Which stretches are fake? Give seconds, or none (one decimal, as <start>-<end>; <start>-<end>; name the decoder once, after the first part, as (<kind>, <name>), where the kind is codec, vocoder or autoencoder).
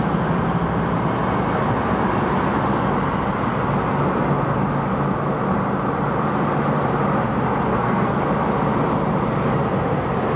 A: 7.7-8.2 (codec, SNAC)